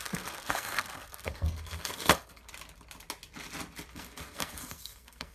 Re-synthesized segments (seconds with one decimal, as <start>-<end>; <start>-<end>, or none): 0.0-2.5; 3.9-5.3